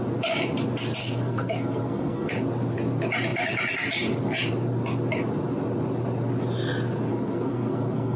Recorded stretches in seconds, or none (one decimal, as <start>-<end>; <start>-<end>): 0.0-1.0; 2.3-7.1